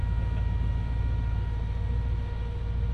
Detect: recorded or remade recorded